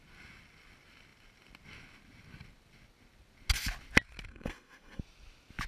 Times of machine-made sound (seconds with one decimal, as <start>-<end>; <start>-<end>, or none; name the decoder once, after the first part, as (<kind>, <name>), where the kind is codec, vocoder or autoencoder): 4.3-5.0 (codec, SNAC)